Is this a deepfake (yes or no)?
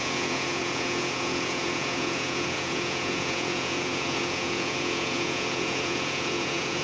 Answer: yes